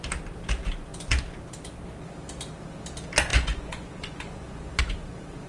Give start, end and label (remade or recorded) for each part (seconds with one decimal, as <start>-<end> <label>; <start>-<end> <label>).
0.0-3.3 recorded; 3.3-4.8 remade; 4.8-5.5 recorded